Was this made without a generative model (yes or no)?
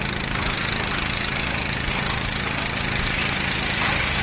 yes